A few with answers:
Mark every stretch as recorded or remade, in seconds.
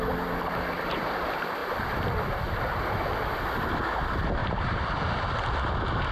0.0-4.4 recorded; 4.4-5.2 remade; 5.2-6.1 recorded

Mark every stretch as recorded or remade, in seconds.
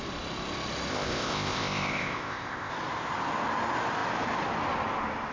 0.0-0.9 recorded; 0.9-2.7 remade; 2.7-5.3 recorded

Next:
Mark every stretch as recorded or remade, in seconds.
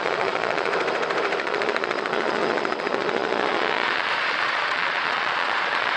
0.0-0.7 remade; 0.7-1.4 recorded; 1.4-6.0 remade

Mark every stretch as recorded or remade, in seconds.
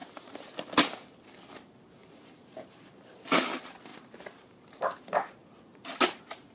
0.0-0.5 remade; 0.5-2.0 recorded; 2.0-2.8 remade; 2.8-3.9 recorded; 3.9-4.8 remade; 4.8-6.5 recorded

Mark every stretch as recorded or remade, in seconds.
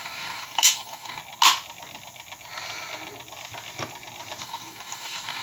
0.0-1.2 remade; 1.2-4.4 recorded; 4.4-5.4 remade